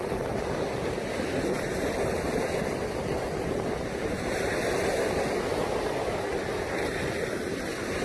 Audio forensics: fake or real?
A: real